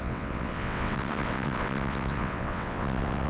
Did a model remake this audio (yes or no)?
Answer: yes